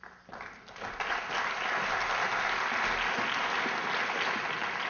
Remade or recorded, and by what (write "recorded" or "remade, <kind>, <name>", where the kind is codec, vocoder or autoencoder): recorded